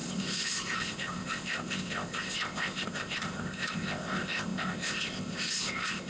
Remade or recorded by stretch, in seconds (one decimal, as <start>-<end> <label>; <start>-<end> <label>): 0.0-6.1 remade

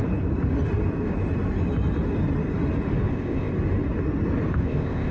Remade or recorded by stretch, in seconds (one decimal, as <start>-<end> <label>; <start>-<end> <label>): 0.0-3.1 recorded; 3.1-3.5 remade; 3.5-4.5 recorded; 4.5-5.1 remade

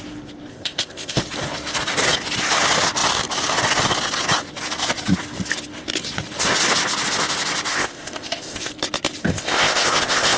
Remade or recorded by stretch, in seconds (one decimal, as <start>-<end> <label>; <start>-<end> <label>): 0.0-0.5 recorded; 0.5-1.2 remade; 1.2-7.7 recorded; 7.7-8.7 remade; 8.7-9.2 recorded; 9.2-10.4 remade

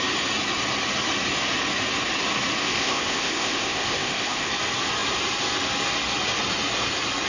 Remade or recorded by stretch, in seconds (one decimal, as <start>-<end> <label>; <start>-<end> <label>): 0.0-2.6 recorded; 2.6-4.5 remade; 4.5-7.3 recorded

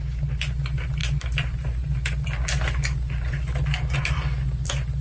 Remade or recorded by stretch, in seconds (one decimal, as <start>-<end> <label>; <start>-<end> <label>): 0.0-5.0 recorded